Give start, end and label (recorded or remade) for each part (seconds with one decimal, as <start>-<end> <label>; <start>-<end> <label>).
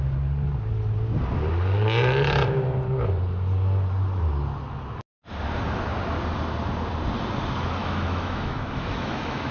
0.0-7.8 recorded; 7.8-9.5 remade